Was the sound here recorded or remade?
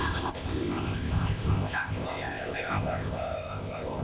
remade